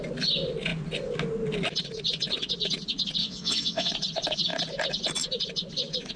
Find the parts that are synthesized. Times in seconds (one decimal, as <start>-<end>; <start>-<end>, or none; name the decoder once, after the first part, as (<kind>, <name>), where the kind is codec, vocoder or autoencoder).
3.2-3.9 (vocoder, WaveNeXt)